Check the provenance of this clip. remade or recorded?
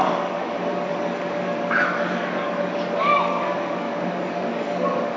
remade